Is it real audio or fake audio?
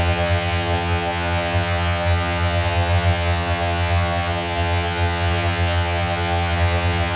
fake